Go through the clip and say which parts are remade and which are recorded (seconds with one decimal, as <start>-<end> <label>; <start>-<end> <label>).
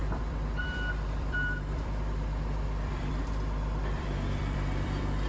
0.0-5.3 remade